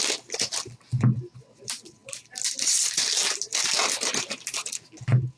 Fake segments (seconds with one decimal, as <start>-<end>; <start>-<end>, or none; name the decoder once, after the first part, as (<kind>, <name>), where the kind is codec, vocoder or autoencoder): none